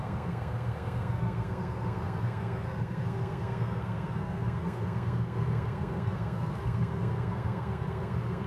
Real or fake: fake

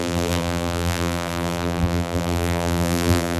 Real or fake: fake